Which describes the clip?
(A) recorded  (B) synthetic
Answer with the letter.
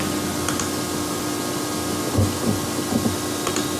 A